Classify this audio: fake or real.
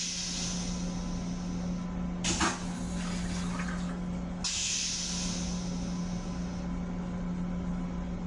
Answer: real